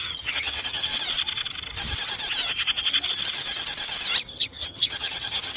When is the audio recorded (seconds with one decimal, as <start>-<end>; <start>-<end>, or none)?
0.9-4.3